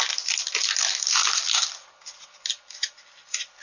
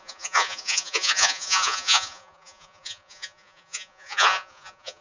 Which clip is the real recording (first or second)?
first